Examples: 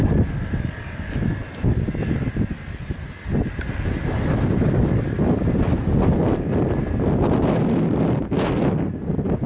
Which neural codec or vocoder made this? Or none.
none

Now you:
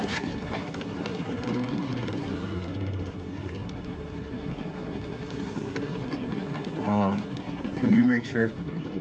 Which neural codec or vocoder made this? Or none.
codec, SNAC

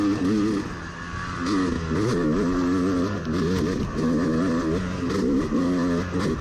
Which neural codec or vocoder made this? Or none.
none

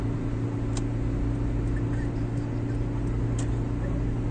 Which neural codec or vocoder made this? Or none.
none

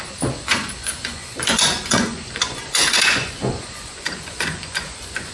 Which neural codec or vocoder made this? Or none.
vocoder, Vocos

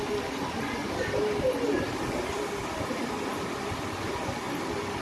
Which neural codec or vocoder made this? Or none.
none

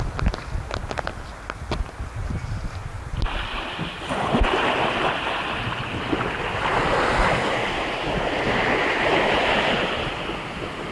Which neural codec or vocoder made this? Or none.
none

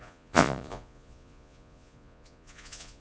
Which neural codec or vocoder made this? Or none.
vocoder, Vocos